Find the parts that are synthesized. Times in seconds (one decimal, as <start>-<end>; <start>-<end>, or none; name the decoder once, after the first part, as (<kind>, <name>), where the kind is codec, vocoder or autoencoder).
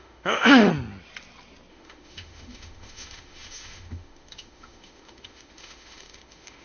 0.0-0.7 (autoencoder, DAC-VAE); 1.7-6.6